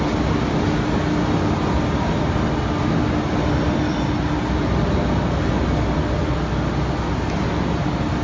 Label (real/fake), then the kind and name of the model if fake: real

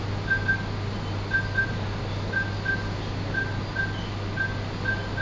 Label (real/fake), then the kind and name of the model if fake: real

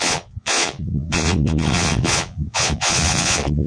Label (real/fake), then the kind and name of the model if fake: fake, vocoder, Vocos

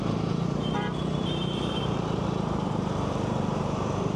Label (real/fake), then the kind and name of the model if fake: fake, vocoder, BigVGAN v2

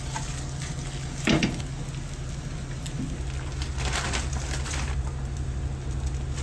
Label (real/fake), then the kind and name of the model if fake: real